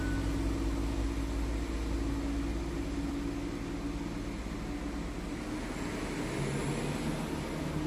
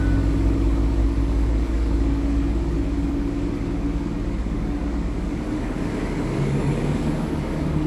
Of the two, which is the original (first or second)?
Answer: first